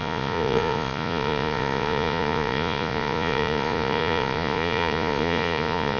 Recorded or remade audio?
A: remade